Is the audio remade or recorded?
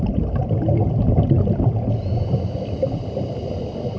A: recorded